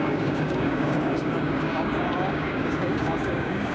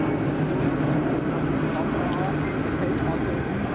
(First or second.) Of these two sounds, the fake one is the first